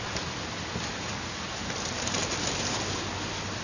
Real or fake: real